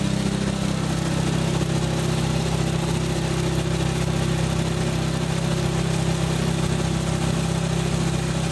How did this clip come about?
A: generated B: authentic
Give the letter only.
B